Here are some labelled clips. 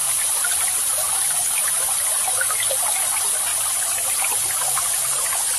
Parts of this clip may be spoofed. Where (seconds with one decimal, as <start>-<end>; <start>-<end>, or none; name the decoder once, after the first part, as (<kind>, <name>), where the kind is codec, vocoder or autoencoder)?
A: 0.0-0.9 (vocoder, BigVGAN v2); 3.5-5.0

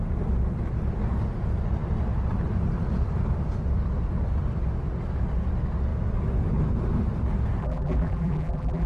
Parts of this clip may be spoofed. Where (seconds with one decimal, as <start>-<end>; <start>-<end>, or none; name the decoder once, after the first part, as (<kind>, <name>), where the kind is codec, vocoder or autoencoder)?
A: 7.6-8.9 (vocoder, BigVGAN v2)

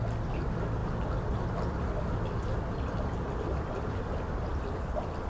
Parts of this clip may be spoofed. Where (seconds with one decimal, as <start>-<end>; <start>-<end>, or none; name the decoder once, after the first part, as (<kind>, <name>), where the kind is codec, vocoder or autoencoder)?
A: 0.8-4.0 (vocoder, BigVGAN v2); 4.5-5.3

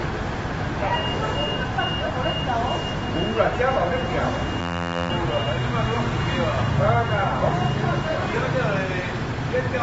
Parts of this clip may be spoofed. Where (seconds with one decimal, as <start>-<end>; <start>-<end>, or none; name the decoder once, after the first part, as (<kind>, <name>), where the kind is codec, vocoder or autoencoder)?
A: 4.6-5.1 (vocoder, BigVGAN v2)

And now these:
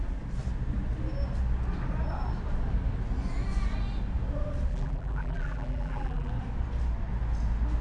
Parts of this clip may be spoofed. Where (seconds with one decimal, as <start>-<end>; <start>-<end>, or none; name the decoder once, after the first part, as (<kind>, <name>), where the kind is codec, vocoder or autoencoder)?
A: 4.7-6.3 (vocoder, BigVGAN v2)

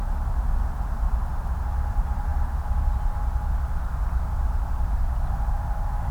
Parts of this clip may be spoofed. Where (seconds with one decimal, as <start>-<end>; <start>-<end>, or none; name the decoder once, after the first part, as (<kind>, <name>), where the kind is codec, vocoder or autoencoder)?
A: none

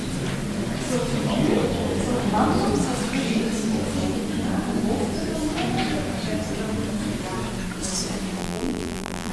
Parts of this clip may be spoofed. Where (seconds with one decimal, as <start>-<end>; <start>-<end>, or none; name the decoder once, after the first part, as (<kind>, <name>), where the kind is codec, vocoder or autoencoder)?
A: 8.4-9.3 (vocoder, BigVGAN v2)